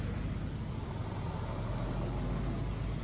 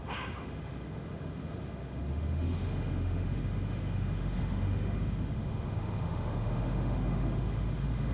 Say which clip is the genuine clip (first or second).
first